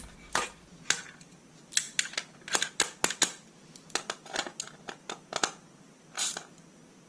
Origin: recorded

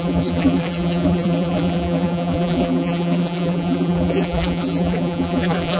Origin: remade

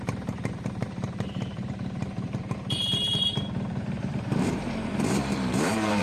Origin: remade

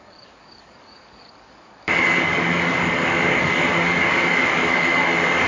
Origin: remade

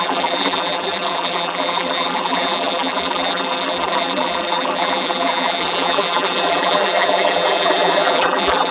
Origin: remade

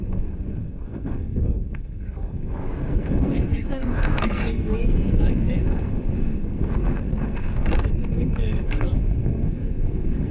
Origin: remade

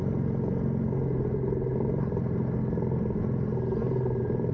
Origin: recorded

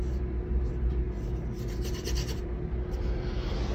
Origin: recorded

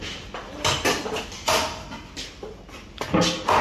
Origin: recorded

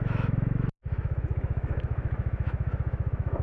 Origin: remade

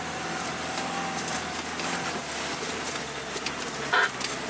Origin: recorded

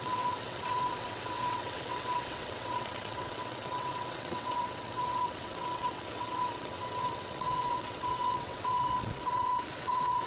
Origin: remade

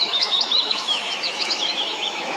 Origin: remade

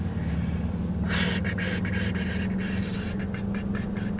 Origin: recorded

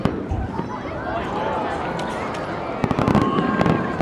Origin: recorded